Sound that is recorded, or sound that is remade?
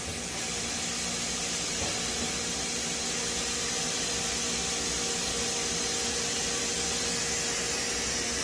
recorded